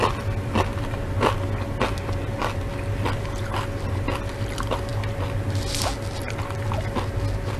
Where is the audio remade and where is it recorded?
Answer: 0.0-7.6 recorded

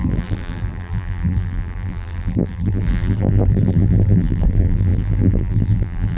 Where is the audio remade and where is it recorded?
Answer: 0.0-6.2 remade

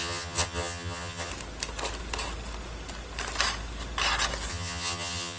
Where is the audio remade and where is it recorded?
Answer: 0.0-1.3 remade; 1.3-4.5 recorded; 4.5-5.4 remade

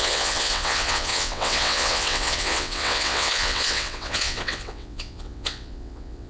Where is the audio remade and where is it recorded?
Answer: 0.0-6.3 remade

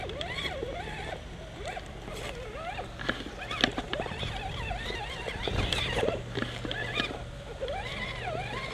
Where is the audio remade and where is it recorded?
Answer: 0.0-8.7 recorded